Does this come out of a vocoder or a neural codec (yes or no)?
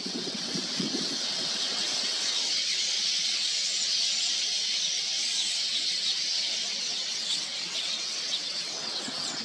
yes